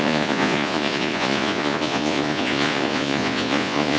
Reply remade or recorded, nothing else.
remade